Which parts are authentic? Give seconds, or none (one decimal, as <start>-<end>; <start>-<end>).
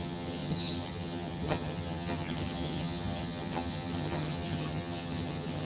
none